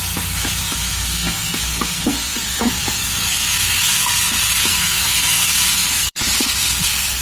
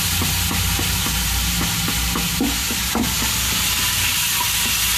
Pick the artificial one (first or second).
first